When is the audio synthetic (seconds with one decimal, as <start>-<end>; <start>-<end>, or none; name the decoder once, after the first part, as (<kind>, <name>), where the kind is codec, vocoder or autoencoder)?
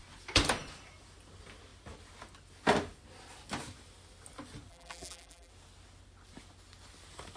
4.7-5.5 (vocoder, BigVGAN v2)